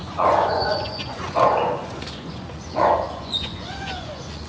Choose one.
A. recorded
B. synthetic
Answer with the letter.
B